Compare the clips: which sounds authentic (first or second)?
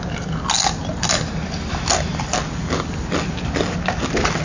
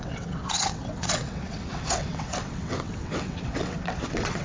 first